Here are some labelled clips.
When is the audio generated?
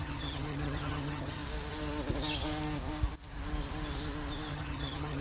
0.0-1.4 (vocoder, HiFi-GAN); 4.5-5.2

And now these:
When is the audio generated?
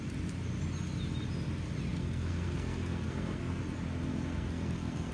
1.9-3.6 (codec, SNAC); 4.1-5.1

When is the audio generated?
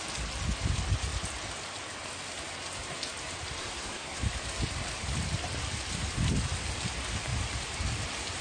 3.6-4.2 (codec, SNAC)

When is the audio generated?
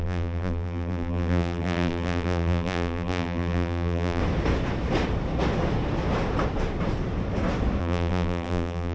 0.0-4.2 (vocoder, BigVGAN v2); 7.8-8.9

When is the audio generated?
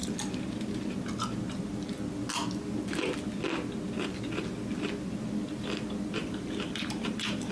6.2-7.5 (vocoder, BigVGAN v2)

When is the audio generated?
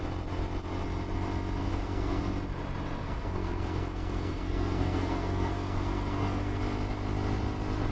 1.6-2.2 (codec, SNAC); 3.0-6.6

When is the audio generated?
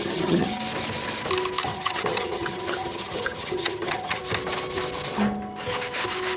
0.0-0.6 (vocoder, HiFi-GAN); 1.7-4.2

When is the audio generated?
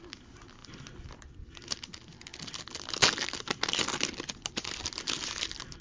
none